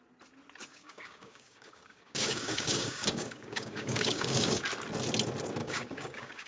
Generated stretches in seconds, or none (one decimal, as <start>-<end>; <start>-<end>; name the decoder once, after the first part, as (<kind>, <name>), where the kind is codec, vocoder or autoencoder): 0.7-4.6 (codec, DAC); 5.6-6.5